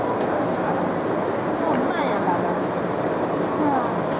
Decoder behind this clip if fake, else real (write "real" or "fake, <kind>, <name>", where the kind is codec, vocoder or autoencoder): real